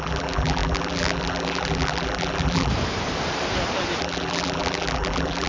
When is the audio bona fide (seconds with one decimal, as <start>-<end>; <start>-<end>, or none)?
2.7-4.0

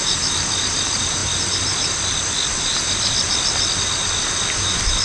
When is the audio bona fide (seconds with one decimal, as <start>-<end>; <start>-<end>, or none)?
0.0-1.2; 3.8-5.0

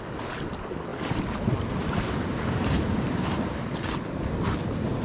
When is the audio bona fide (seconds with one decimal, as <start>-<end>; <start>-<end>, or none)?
0.0-0.9; 3.0-5.0

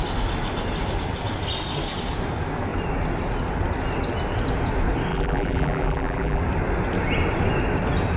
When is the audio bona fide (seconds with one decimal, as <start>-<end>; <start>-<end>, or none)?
0.0-5.1; 6.4-8.2

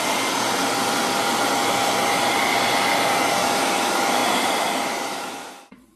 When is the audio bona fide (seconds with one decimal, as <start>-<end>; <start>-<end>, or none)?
0.0-4.2; 5.3-6.0